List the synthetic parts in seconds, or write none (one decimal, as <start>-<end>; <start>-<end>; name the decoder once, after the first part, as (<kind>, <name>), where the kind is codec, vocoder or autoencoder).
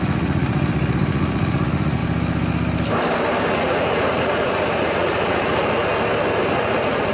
0.0-2.0 (vocoder, Vocos); 3.5-5.8; 6.5-7.1